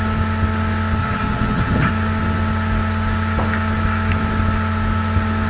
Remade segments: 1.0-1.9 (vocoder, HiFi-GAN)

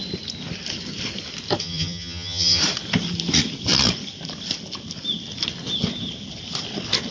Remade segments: 1.6-2.6 (vocoder, HiFi-GAN)

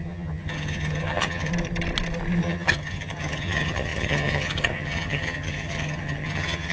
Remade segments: 0.0-1.5 (vocoder, HiFi-GAN); 2.4-6.7

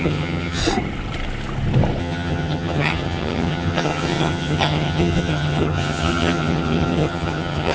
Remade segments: 0.0-0.6 (vocoder, HiFi-GAN); 2.0-7.7

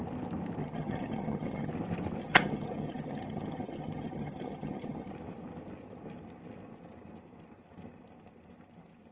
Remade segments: 0.6-1.7 (vocoder, HiFi-GAN); 2.2-5.1

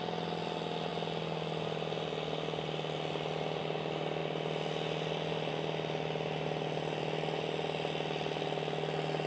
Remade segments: none

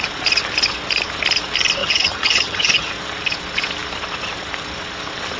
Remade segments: 1.8-2.9 (vocoder, HiFi-GAN)